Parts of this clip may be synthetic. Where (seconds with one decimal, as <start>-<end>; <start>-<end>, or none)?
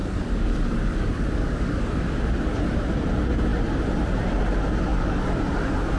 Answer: 0.0-2.3; 4.9-5.4